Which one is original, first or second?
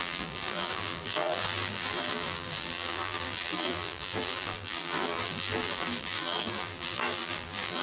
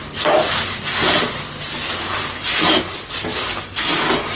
second